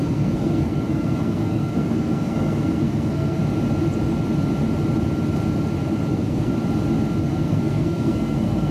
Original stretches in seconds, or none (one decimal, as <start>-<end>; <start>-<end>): 3.4-6.1; 6.5-7.2